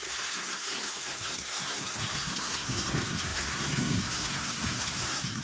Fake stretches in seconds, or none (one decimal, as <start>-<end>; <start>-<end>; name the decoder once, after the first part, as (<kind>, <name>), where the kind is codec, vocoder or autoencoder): 0.0-5.4 (codec, SNAC)